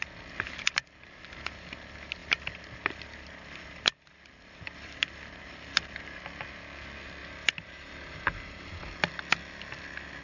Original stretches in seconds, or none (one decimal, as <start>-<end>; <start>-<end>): 0.0-7.2; 8.8-10.2